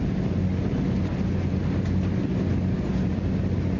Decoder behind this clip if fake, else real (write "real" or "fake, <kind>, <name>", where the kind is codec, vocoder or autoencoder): real